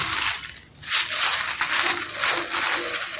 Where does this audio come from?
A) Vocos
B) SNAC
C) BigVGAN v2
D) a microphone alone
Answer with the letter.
D